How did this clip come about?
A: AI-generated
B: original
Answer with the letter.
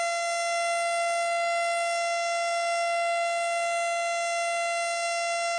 B